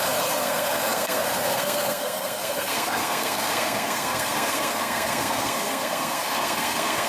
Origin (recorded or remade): remade